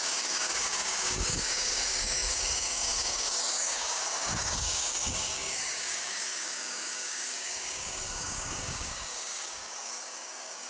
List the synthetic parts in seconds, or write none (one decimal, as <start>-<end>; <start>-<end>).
0.0-10.7